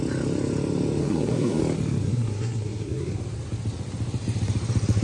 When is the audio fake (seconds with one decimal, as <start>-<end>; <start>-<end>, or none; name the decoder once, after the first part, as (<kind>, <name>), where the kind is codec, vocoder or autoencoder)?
1.0-1.6 (codec, SNAC); 2.0-3.1